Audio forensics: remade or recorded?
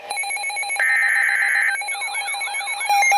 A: remade